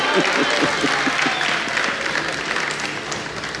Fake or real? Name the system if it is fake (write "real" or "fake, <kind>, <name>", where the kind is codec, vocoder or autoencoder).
real